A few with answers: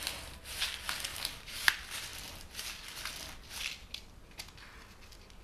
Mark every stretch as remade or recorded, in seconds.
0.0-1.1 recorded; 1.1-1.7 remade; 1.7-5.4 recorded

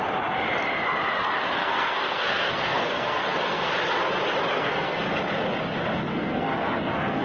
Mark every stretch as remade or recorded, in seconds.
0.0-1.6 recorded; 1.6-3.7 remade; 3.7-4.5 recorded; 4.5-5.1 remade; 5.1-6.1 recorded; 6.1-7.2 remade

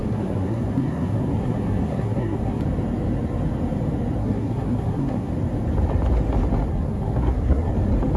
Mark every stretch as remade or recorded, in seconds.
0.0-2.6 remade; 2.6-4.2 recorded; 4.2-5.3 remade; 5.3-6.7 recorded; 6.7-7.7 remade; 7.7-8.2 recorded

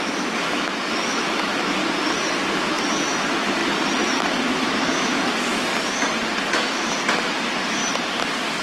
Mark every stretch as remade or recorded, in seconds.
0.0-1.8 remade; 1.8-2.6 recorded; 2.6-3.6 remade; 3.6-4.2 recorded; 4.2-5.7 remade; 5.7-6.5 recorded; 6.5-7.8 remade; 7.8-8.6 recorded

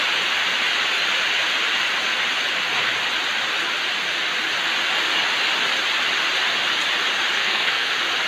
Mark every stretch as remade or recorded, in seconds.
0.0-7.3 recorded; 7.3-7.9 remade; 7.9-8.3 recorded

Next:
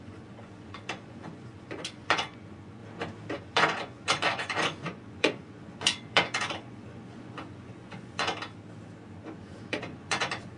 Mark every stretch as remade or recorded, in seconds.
0.0-2.8 remade; 2.8-3.3 recorded; 3.3-8.3 remade; 8.3-9.4 recorded; 9.4-10.6 remade